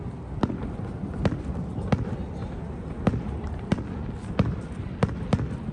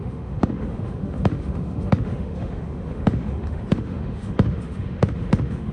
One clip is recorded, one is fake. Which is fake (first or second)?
second